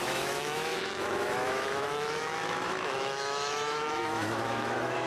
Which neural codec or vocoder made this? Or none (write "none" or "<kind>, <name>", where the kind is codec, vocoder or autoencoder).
autoencoder, DAC-VAE